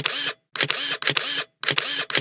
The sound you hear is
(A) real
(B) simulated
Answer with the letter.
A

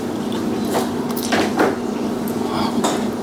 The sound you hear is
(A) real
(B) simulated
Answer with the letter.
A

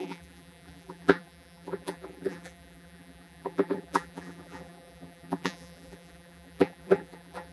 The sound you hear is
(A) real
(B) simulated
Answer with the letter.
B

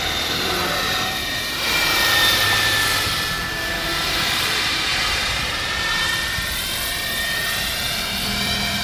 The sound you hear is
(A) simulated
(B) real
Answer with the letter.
A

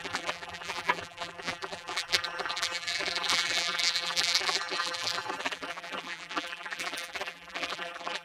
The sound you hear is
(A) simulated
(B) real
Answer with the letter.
A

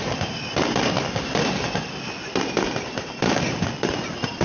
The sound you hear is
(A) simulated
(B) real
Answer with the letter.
A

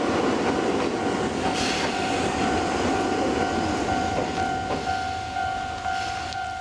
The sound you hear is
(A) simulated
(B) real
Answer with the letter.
A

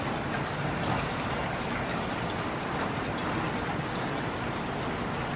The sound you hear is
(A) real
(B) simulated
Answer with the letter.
B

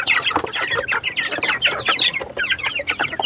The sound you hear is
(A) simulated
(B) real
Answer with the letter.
A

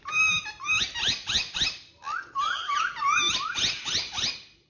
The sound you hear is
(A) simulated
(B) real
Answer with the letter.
B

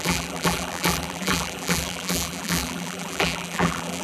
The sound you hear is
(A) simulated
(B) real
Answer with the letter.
A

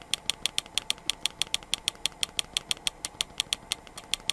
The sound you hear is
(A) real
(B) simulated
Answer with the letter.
A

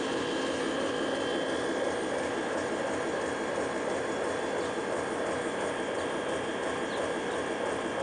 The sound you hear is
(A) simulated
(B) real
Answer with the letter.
A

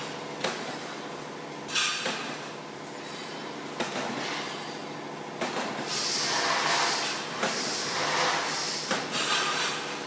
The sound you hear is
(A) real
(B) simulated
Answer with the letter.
A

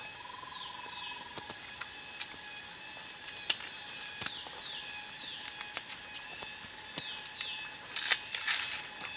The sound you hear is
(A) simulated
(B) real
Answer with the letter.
B